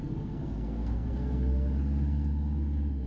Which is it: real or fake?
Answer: fake